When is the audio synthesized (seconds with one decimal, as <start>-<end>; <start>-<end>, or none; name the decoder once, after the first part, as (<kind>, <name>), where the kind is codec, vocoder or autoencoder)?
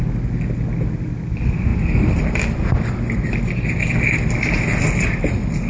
none